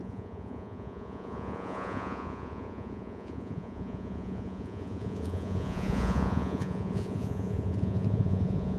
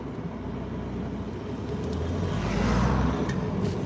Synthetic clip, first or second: first